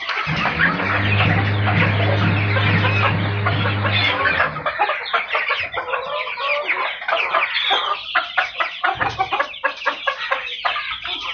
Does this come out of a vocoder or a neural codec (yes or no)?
no